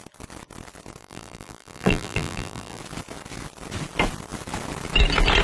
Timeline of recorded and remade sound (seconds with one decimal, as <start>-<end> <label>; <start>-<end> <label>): 0.0-1.0 recorded; 1.0-2.8 remade; 2.8-5.4 recorded